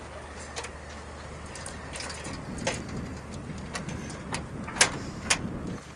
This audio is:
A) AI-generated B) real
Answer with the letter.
B